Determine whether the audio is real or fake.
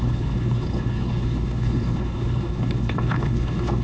fake